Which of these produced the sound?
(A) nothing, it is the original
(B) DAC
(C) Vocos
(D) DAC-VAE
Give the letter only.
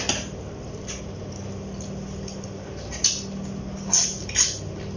A